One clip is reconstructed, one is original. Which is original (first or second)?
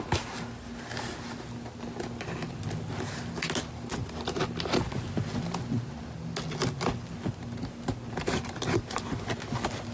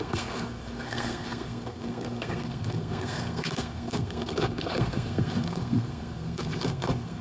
first